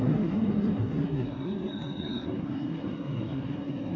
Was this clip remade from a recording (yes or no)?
yes